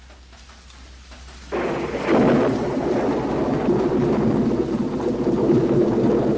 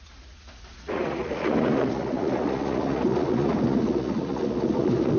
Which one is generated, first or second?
second